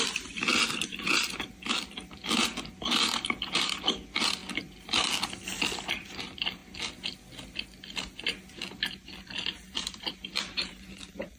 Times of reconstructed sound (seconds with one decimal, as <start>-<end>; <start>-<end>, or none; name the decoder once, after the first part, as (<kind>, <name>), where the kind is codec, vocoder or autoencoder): 0.0-2.2 (vocoder, BigVGAN v2); 3.2-4.4; 5.9-6.6; 8.9-11.4

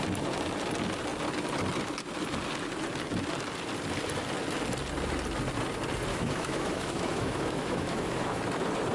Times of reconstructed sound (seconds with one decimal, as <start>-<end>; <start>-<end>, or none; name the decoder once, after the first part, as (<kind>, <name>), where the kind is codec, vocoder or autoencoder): 6.1-8.4 (autoencoder, DAC-VAE)

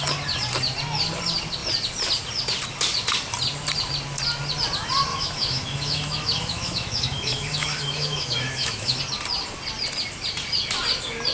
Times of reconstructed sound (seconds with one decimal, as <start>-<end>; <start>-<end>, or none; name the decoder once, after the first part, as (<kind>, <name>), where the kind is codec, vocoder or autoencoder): 5.1-9.0 (autoencoder, DAC-VAE)